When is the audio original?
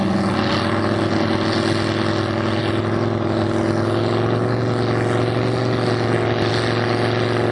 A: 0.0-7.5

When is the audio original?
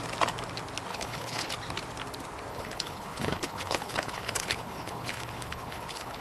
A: 0.0-0.9; 1.5-2.5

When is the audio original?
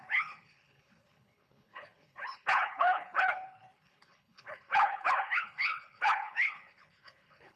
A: none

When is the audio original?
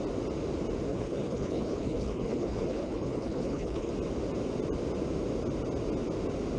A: 0.0-0.9; 3.9-6.6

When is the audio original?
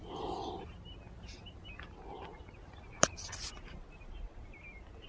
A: 0.0-5.1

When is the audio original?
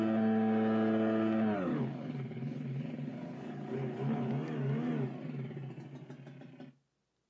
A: 0.0-1.7; 4.3-7.3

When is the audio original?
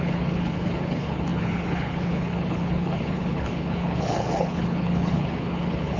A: none